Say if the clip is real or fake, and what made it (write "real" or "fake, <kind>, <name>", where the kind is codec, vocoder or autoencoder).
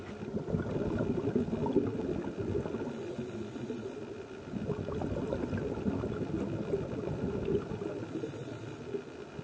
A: real